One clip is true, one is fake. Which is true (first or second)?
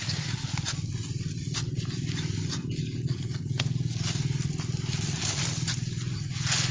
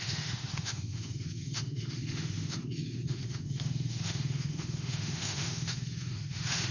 first